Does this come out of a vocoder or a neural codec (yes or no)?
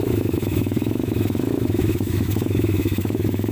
yes